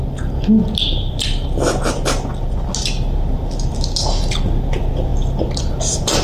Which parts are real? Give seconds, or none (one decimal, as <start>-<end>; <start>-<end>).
0.0-6.2